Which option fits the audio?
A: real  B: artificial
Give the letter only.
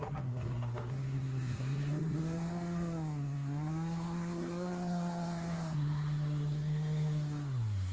B